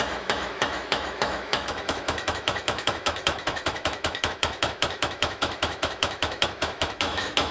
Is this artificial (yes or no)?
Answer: yes